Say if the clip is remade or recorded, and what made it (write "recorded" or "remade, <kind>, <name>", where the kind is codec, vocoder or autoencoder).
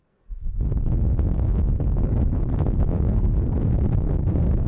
remade, codec, SNAC